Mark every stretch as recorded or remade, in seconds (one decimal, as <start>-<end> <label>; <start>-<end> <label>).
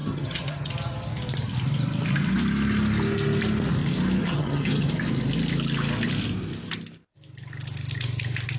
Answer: 0.0-0.7 remade; 0.7-4.2 recorded; 4.2-4.9 remade; 4.9-8.6 recorded